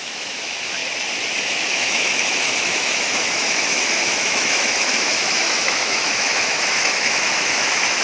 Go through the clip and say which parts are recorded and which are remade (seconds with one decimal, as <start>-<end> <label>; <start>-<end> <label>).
0.0-0.8 remade; 0.8-1.4 recorded; 1.4-8.0 remade